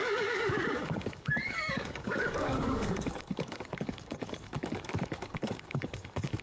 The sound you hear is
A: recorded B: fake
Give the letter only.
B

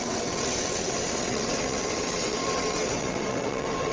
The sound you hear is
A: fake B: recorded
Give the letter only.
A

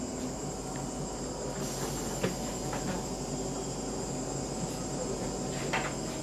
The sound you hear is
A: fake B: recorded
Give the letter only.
B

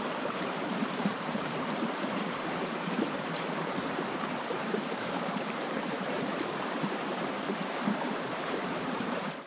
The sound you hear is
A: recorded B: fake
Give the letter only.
B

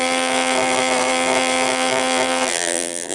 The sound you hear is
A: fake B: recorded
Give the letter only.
A